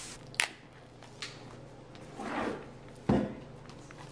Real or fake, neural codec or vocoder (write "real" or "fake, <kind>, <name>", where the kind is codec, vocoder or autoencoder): real